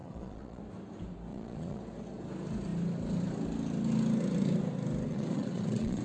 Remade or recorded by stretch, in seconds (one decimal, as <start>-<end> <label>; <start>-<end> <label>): 0.0-0.6 remade; 0.6-1.3 recorded; 1.3-1.8 remade; 1.8-5.1 recorded; 5.1-6.0 remade